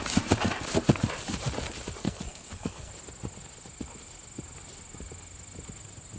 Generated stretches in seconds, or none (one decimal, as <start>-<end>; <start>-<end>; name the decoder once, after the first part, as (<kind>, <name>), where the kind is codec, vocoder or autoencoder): 2.0-2.9 (codec, SNAC)